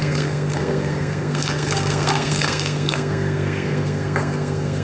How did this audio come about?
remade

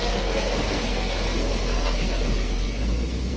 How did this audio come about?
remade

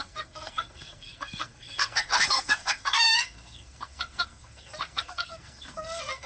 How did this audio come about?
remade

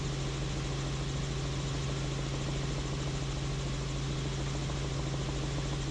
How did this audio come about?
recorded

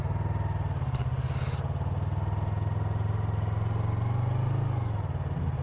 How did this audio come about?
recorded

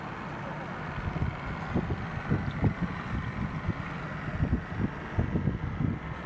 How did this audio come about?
recorded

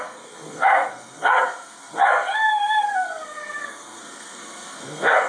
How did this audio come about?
remade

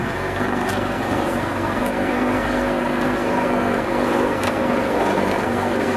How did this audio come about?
remade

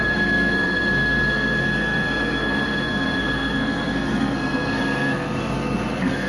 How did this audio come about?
remade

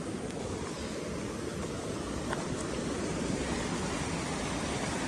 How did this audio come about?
recorded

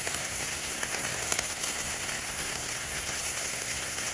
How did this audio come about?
remade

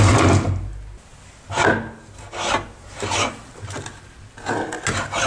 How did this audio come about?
recorded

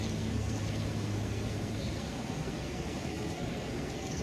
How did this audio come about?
remade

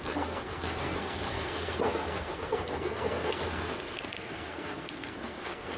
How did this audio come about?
remade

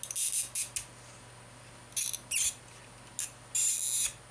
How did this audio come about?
recorded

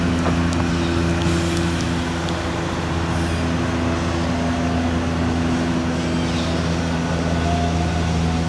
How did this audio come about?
recorded